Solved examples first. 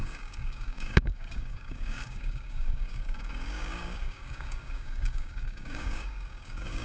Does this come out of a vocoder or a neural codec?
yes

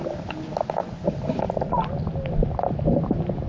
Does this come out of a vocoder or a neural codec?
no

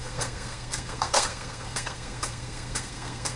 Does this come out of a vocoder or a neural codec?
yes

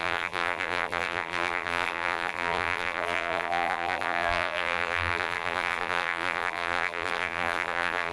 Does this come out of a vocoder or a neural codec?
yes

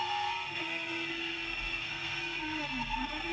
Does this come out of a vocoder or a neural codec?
yes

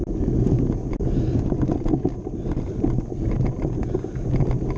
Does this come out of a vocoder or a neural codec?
no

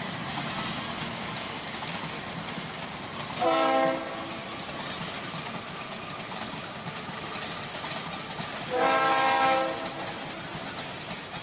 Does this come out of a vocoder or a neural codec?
no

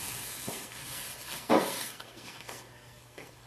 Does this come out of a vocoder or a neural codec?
yes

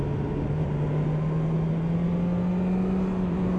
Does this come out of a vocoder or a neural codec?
no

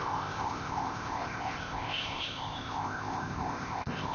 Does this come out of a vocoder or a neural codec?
yes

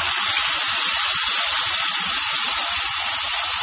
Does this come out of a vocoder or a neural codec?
no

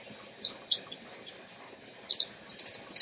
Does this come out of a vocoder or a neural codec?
no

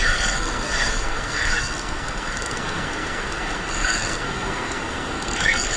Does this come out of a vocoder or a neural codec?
yes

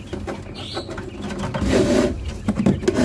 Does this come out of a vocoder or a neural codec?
no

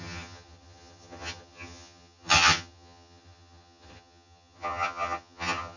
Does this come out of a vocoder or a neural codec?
yes